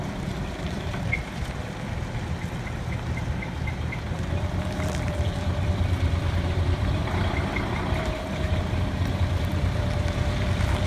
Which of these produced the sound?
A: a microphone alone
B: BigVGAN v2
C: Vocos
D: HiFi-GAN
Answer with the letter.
B